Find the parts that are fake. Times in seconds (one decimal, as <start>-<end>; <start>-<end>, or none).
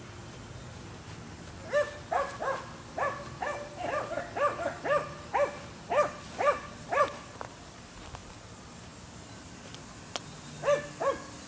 none